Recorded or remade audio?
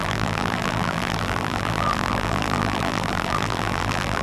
remade